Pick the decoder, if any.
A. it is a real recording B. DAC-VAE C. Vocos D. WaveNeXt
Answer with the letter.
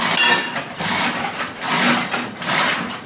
A